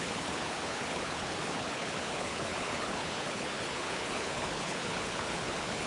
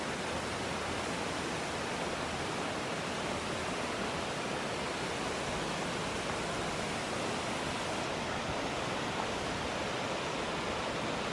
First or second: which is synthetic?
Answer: first